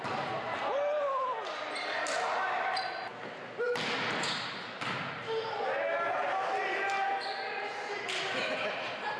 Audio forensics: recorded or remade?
recorded